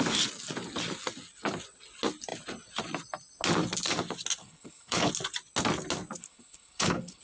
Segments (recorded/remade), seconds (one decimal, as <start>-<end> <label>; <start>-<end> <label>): 0.0-4.4 recorded; 4.4-5.1 remade; 5.1-6.2 recorded; 6.2-7.2 remade